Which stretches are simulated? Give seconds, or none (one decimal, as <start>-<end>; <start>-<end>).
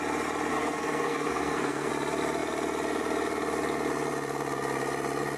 0.5-1.9